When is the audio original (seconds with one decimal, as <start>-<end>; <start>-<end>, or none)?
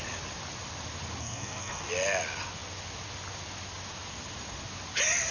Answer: 0.0-1.2; 1.8-5.3